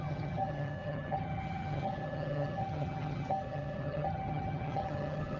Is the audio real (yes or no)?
no